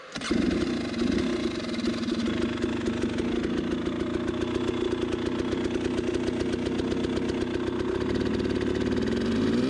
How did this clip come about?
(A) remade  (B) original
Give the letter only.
B